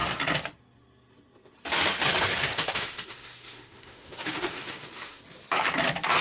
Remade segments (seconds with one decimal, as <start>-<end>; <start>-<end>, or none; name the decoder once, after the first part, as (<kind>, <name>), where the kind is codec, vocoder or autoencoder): 2.5-5.2 (autoencoder, DAC-VAE)